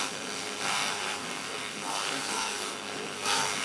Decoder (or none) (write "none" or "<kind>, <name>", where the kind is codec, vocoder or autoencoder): codec, SNAC